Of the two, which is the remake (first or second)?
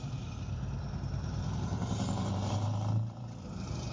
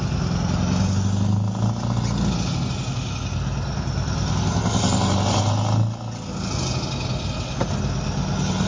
first